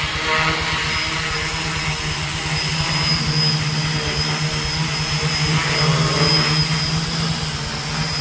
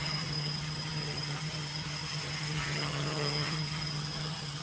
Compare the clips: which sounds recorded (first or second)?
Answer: first